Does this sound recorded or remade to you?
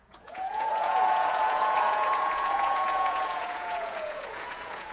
remade